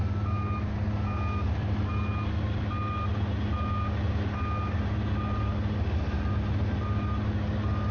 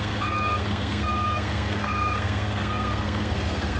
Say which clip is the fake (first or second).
second